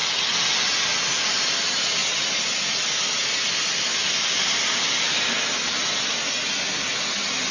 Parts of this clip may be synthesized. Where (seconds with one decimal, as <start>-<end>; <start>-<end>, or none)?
none